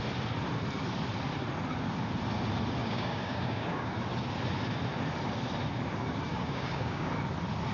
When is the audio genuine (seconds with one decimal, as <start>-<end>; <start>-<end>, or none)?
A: 0.0-2.8; 3.9-6.3; 7.1-7.7